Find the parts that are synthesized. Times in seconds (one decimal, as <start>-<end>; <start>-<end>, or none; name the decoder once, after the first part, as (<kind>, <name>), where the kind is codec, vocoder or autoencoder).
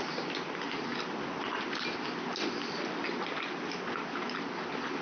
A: none